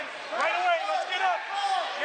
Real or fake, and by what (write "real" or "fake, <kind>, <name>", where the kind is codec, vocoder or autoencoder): real